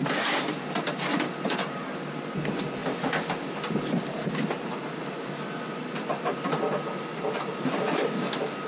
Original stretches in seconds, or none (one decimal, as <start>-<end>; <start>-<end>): 0.0-8.7